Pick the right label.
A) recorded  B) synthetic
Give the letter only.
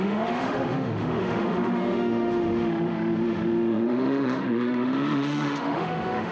B